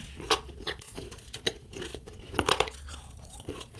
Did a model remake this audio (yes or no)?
yes